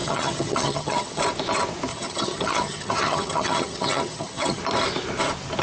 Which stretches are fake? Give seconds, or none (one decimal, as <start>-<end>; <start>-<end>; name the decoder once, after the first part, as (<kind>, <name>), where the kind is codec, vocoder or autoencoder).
0.0-1.2 (vocoder, HiFi-GAN); 1.9-4.6